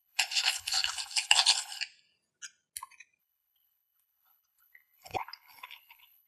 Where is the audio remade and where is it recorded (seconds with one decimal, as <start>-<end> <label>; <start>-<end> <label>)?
0.0-1.8 remade; 1.8-3.2 recorded; 3.2-6.3 remade